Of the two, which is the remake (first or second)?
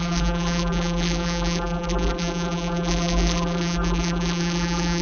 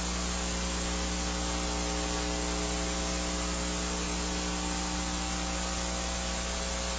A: first